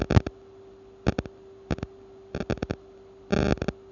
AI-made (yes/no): no